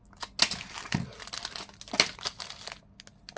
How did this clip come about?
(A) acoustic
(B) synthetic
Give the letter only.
A